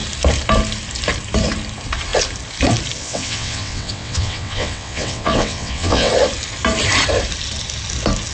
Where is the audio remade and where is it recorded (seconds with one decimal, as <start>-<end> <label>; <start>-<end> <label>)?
0.0-3.0 recorded; 3.0-6.1 remade; 6.1-8.3 recorded